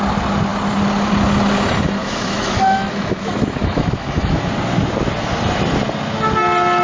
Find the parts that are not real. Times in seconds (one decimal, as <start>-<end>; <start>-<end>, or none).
2.0-4.5